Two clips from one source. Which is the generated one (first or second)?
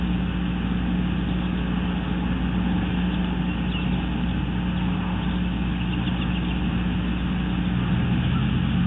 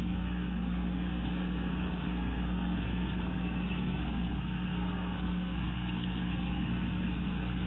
second